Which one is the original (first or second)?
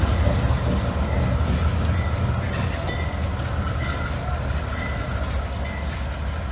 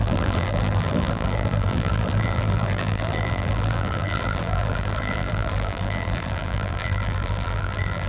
first